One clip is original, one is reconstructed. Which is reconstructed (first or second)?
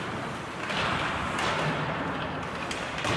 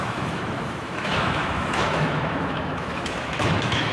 second